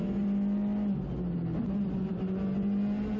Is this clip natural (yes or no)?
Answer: yes